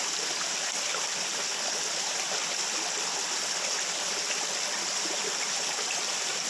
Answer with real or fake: real